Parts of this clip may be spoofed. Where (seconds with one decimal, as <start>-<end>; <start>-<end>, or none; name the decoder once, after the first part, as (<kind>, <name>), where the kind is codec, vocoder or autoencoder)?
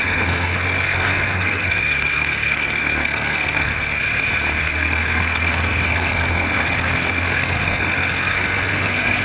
0.0-4.0 (codec, SNAC); 4.6-9.2